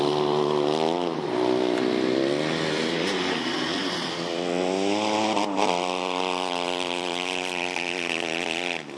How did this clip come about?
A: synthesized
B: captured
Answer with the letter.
B